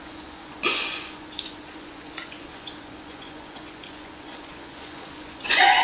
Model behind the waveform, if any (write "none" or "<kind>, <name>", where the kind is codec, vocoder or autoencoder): vocoder, Vocos